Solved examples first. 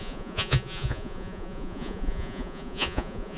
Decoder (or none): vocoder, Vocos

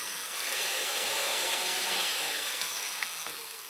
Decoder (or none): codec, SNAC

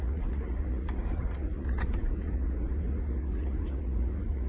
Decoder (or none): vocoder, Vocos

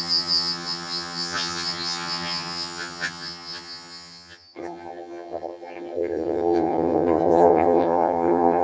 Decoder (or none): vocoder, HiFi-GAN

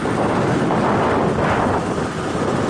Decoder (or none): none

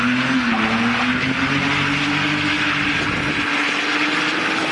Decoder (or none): none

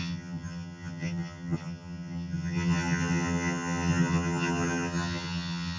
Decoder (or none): vocoder, HiFi-GAN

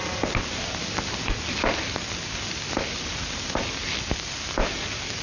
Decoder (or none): none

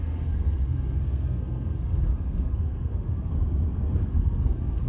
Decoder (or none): codec, SNAC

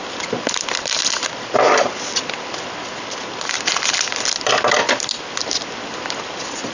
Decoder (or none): vocoder, BigVGAN v2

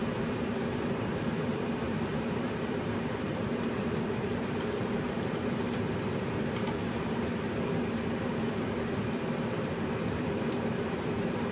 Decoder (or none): vocoder, BigVGAN v2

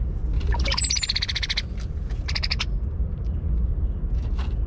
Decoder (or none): none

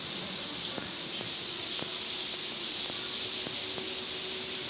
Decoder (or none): none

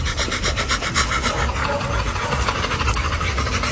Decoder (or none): none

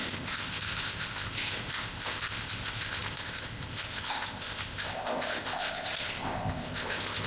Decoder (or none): codec, ZipCodec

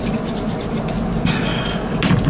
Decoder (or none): none